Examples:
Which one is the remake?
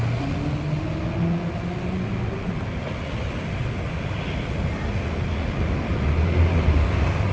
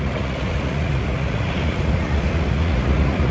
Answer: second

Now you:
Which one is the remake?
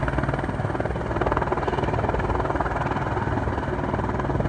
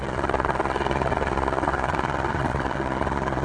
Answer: second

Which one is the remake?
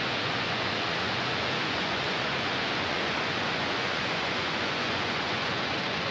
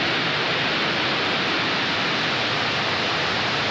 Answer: first